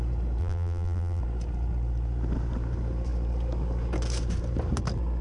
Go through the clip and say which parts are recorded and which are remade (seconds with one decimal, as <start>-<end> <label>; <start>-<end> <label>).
0.0-0.4 recorded; 0.4-1.2 remade; 1.2-5.2 recorded